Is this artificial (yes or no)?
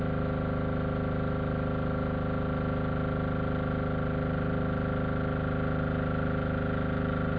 no